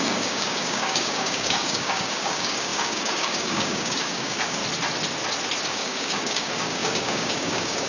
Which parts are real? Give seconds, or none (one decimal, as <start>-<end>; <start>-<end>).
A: 4.6-5.7

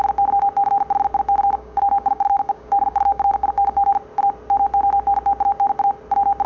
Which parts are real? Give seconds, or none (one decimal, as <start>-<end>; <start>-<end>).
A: 0.0-1.4; 3.9-6.5

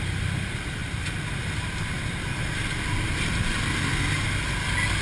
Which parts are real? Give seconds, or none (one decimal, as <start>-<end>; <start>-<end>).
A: 0.0-5.0

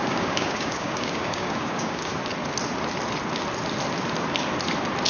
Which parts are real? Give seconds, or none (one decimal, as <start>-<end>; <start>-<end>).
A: 2.1-5.1

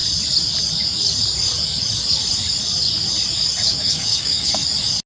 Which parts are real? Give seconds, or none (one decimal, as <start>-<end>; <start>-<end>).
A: 0.0-3.7; 4.5-5.1

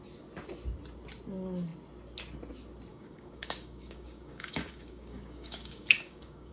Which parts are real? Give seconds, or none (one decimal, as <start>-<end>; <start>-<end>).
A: 0.0-2.9

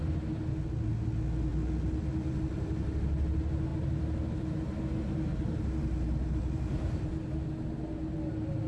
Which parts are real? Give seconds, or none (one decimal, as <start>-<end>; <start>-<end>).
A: 0.0-8.7

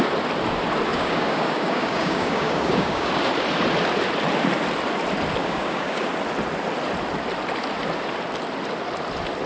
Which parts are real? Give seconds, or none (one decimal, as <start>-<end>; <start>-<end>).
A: 0.0-0.9; 3.1-5.4; 6.1-9.5